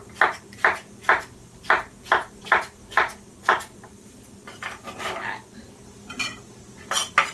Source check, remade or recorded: recorded